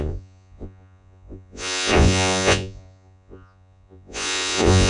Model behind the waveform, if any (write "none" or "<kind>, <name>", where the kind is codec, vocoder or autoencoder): vocoder, Vocos